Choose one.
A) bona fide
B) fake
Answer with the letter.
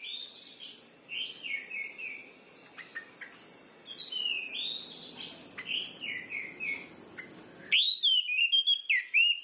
A